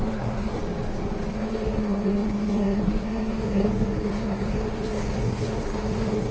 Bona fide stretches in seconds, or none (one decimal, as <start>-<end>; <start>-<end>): 0.6-1.3